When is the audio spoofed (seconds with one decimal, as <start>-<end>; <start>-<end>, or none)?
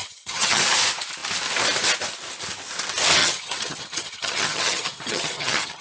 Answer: 0.0-0.6; 3.2-5.8